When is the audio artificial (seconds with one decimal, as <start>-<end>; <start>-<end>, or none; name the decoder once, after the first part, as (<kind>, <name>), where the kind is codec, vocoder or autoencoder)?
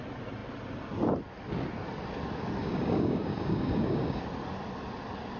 2.6-4.2 (codec, DAC)